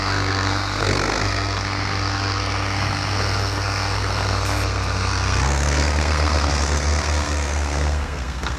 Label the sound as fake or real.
fake